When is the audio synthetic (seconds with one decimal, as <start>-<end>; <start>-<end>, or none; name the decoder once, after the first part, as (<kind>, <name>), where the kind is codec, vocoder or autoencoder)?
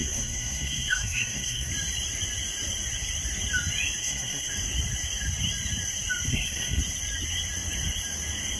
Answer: 0.0-1.7 (codec, SNAC); 4.0-4.5; 6.3-6.8